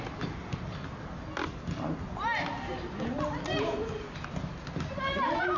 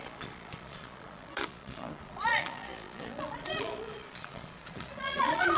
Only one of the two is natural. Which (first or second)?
first